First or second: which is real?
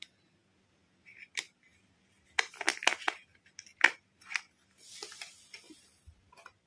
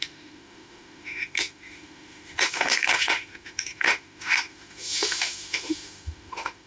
first